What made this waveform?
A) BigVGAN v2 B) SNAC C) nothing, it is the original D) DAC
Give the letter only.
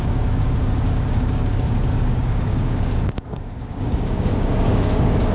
D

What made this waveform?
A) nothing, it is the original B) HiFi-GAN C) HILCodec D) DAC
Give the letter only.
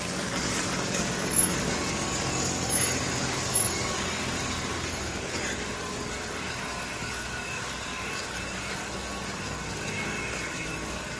D